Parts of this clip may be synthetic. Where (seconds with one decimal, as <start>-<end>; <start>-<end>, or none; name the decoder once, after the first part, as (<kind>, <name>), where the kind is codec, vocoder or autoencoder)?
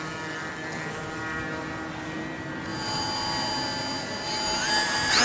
none